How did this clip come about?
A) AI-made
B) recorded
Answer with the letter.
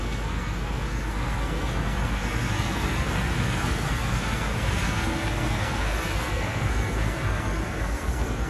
A